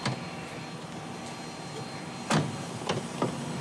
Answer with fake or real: real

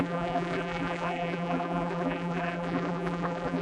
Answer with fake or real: fake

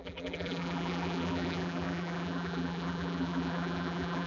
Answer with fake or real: fake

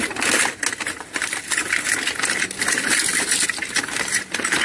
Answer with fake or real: real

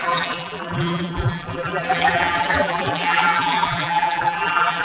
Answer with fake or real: fake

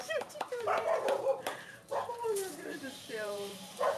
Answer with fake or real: fake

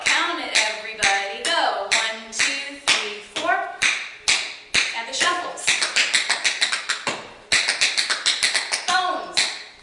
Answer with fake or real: real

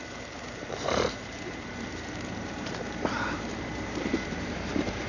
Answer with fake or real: fake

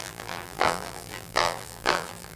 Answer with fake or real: fake